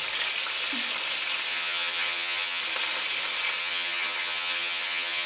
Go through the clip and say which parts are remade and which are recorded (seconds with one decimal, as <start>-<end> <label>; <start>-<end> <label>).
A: 0.0-1.5 recorded; 1.5-2.6 remade; 2.6-3.6 recorded; 3.6-5.3 remade